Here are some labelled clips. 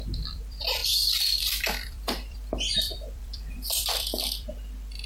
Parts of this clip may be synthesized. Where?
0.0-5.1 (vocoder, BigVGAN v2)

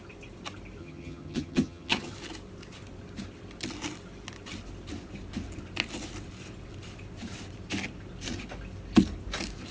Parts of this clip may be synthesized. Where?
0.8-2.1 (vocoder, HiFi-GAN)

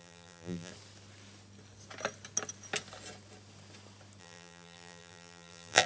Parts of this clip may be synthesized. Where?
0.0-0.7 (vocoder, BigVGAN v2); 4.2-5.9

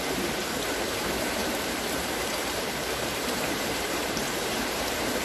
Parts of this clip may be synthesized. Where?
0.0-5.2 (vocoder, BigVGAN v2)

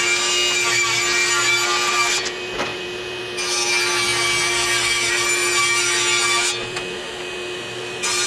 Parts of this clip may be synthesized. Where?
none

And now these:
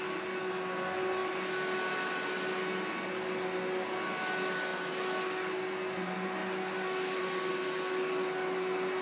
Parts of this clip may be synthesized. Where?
none

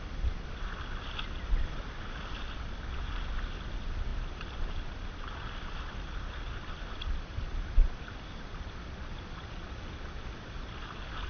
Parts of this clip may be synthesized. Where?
4.1-9.3 (vocoder, BigVGAN v2)

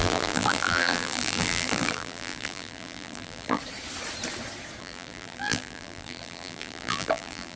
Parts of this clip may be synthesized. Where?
0.0-3.6 (vocoder, BigVGAN v2); 4.8-7.6